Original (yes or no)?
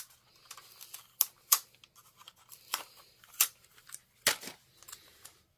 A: yes